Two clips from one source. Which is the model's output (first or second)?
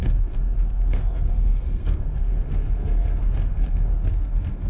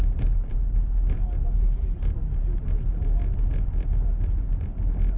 first